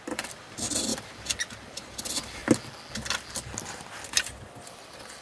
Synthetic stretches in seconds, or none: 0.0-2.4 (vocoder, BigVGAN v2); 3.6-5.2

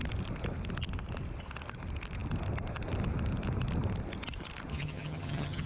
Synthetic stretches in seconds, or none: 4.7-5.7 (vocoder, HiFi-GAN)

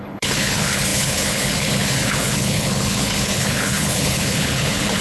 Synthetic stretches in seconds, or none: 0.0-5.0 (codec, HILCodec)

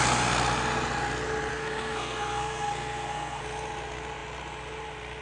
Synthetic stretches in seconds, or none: 1.5-3.4 (codec, SNAC)

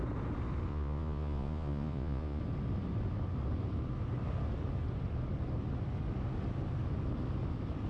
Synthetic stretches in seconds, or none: 0.7-2.4 (vocoder, Vocos)

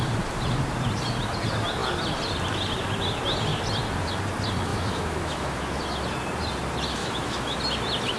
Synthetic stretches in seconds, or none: 4.7-5.8 (autoencoder, DAC-VAE); 7.0-7.6

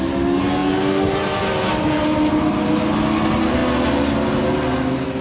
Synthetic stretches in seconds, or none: none

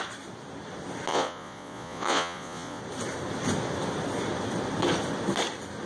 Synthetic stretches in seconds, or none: 1.1-2.8 (vocoder, Vocos)